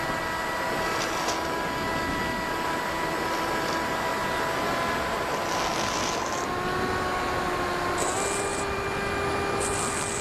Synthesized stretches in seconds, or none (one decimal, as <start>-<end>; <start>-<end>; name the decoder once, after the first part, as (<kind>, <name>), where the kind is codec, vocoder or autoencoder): 8.5-9.1 (vocoder, BigVGAN v2)